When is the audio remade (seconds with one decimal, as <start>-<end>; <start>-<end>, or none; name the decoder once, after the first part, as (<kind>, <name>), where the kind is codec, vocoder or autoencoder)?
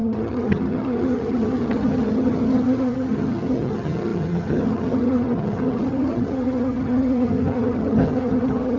0.0-8.8 (vocoder, HiFi-GAN)